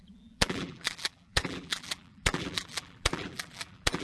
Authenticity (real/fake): fake